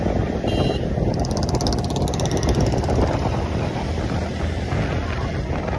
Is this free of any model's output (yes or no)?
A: yes